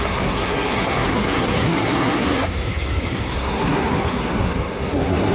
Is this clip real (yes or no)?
no